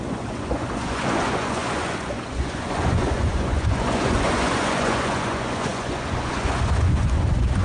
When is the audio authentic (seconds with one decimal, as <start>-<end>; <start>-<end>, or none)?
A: none

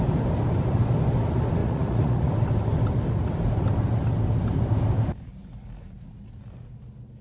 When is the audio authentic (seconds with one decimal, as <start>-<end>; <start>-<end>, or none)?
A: 0.0-1.6; 2.3-7.2

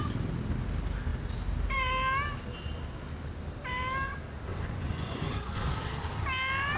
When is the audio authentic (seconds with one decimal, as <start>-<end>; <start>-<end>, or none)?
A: 0.0-4.5; 5.7-6.8

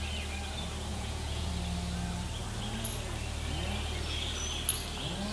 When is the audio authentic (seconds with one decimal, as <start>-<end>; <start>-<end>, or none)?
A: 0.0-0.9; 1.5-5.3

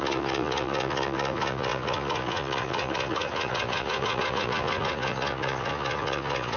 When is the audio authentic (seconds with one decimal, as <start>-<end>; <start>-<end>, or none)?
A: none

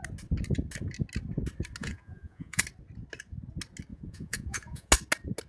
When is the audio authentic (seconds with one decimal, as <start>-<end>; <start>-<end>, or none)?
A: 0.0-1.8; 2.6-3.9; 4.9-5.5

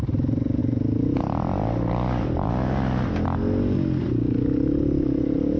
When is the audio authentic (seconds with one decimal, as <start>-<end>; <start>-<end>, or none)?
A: 0.0-5.6